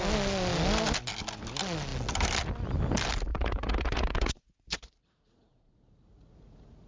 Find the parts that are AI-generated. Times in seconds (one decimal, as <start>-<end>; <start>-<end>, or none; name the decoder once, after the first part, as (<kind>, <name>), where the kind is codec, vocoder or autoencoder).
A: 3.3-6.9 (vocoder, Vocos)